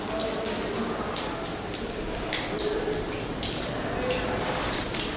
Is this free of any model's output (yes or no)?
yes